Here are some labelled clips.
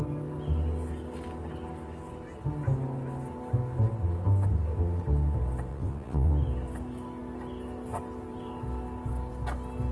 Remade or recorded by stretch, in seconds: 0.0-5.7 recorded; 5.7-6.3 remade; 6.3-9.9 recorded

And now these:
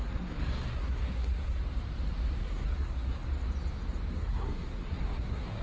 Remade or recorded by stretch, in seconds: 0.0-1.6 remade; 1.6-2.4 recorded; 2.4-3.2 remade; 3.2-4.1 recorded; 4.1-5.6 remade